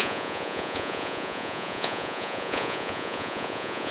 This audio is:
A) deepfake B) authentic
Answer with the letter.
A